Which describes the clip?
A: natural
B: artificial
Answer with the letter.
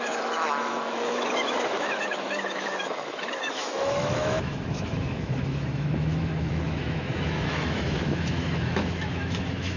B